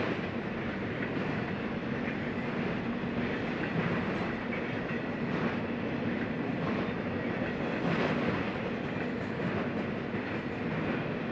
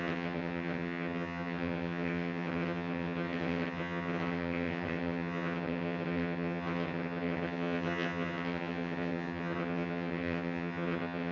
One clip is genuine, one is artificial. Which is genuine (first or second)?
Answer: first